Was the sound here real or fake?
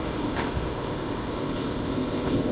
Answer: fake